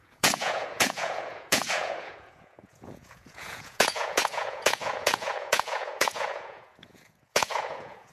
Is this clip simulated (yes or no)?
yes